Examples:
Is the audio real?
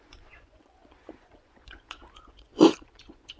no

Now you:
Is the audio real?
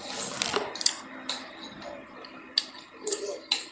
yes